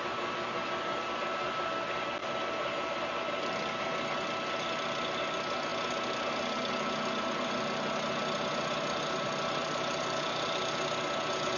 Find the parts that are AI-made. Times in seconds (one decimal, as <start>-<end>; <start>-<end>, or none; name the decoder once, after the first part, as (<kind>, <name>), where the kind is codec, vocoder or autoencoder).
none